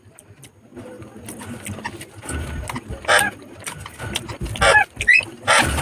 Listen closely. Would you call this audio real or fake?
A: real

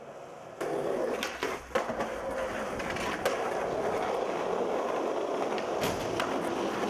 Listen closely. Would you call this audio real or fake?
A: real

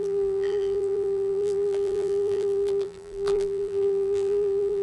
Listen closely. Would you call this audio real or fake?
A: fake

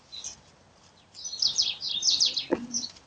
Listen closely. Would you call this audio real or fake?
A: fake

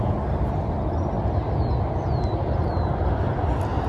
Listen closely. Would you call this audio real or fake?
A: real